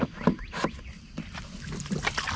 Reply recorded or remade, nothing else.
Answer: recorded